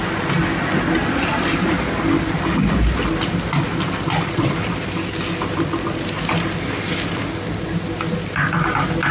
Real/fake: real